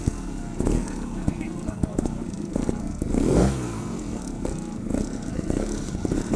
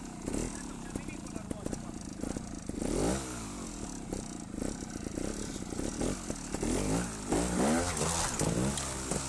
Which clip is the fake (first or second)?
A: first